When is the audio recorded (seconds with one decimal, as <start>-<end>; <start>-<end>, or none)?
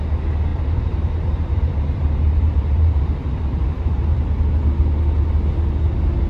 0.0-0.5; 4.3-6.3